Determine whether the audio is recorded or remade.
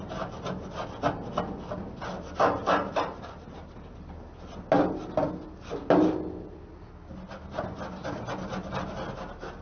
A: recorded